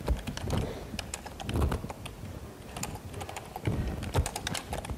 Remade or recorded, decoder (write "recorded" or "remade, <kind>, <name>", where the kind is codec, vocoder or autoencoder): recorded